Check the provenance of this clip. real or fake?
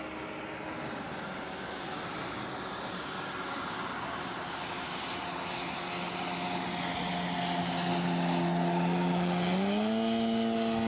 real